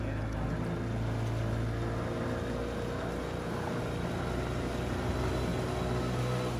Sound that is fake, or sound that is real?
real